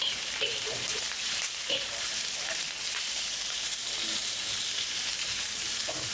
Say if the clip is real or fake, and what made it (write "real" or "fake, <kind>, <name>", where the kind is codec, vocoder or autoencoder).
fake, vocoder, BigVGAN v2